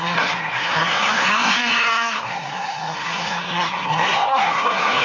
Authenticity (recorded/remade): remade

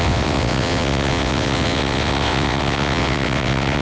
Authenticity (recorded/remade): remade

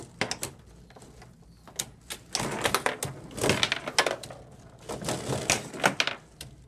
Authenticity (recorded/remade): recorded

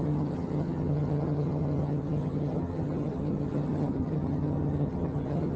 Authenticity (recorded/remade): remade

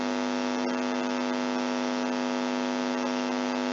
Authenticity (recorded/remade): recorded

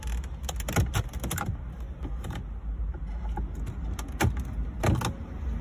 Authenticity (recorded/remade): recorded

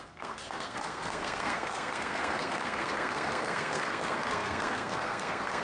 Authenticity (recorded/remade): remade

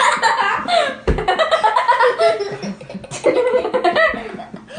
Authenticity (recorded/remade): recorded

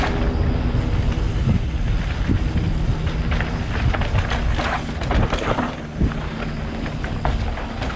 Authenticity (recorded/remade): recorded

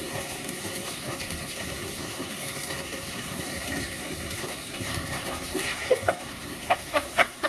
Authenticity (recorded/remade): remade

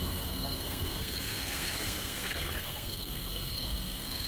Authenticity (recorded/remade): remade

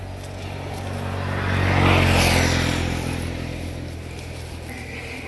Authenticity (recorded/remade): recorded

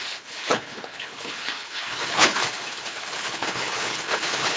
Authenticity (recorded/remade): remade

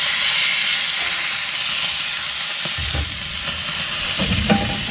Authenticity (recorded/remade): recorded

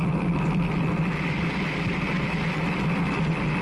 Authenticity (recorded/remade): recorded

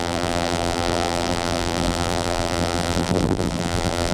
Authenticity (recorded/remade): remade